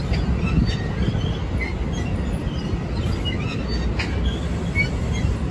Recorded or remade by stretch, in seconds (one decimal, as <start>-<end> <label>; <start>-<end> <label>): 0.0-5.5 recorded